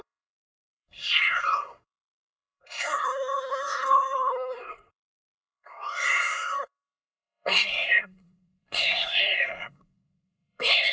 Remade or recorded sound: remade